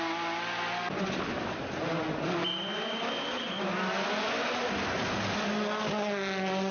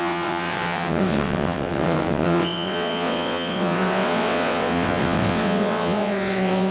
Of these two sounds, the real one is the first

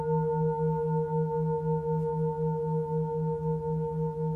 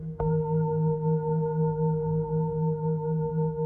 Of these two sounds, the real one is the first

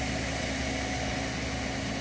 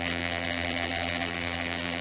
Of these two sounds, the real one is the first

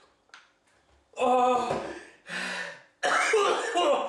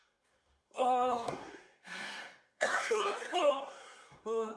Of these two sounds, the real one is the first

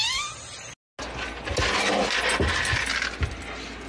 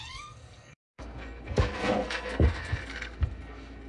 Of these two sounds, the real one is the first